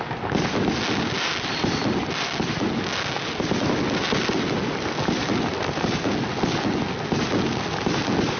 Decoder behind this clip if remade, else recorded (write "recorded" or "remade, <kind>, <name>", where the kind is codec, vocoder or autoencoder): recorded